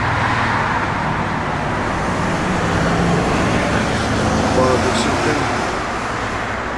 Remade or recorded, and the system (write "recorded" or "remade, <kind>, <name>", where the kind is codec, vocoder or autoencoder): recorded